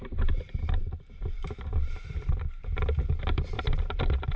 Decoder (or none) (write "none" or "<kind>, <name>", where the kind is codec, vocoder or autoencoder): vocoder, BigVGAN v2